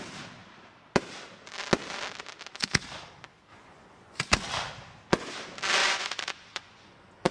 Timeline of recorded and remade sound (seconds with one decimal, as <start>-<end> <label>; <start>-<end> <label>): 0.0-3.5 recorded; 3.5-4.2 remade; 4.2-5.8 recorded; 5.8-7.3 remade